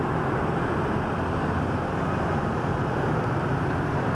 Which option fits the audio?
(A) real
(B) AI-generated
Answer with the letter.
A